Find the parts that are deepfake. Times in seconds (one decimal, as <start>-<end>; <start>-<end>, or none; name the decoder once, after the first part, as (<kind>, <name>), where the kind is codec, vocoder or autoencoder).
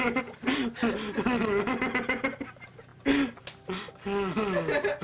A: none